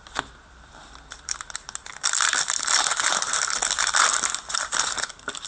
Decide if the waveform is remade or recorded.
remade